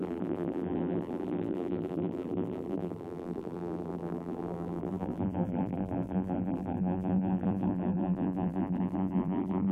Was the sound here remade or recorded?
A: remade